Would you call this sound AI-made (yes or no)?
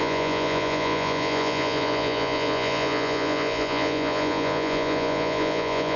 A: yes